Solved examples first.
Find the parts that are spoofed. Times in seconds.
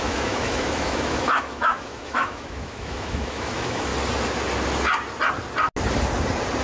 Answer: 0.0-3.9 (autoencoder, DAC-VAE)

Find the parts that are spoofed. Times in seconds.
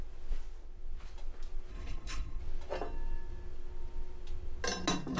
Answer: 1.7-2.4 (codec, HILCodec)